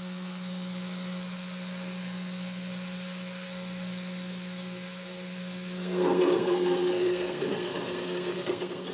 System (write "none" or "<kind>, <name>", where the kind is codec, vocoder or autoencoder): codec, SNAC